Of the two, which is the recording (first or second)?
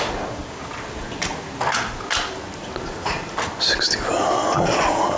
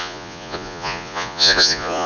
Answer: first